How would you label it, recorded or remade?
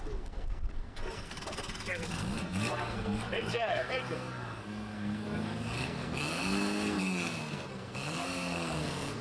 remade